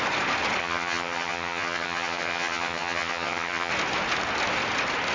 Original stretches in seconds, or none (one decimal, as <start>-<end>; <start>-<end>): 0.0-0.6; 3.7-5.1